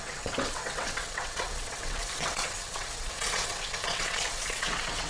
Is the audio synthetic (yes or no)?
yes